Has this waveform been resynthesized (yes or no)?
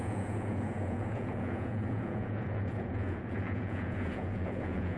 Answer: yes